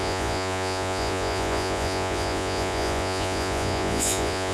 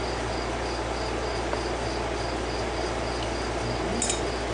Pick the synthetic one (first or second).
first